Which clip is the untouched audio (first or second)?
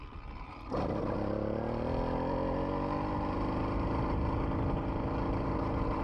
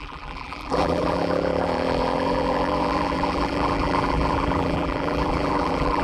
first